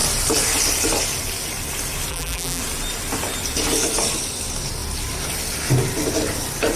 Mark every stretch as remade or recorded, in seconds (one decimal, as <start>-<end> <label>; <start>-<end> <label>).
0.0-2.1 recorded; 2.1-2.6 remade; 2.6-6.8 recorded